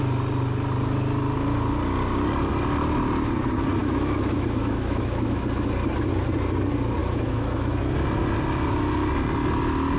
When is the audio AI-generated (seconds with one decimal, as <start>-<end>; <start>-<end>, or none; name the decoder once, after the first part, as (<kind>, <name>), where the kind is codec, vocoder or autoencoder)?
3.8-5.4 (autoencoder, DAC-VAE); 7.0-7.8